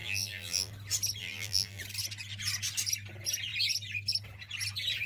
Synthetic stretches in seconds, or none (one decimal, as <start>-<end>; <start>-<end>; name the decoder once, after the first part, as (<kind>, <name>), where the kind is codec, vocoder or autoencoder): 0.0-0.7 (vocoder, BigVGAN v2); 1.2-1.8